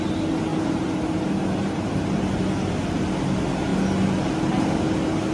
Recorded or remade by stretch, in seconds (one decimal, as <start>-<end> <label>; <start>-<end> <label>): 0.0-0.5 recorded; 0.5-2.4 remade; 2.4-5.3 recorded